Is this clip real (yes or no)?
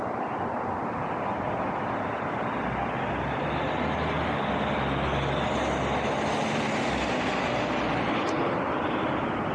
yes